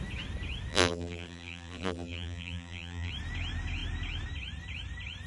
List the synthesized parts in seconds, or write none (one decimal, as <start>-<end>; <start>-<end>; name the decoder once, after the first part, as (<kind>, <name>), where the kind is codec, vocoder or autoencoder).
0.7-3.1 (vocoder, BigVGAN v2)